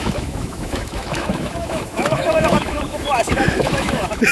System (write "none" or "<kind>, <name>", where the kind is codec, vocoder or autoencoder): autoencoder, DAC-VAE